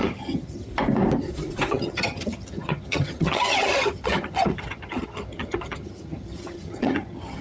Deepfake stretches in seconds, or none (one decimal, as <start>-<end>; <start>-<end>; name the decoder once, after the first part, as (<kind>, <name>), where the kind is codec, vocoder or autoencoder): 0.0-0.7 (vocoder, HiFi-GAN); 1.7-7.4